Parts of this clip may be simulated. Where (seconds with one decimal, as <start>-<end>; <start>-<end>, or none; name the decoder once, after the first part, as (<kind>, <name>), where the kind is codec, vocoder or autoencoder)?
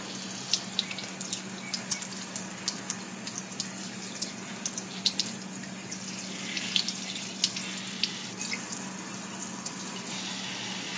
none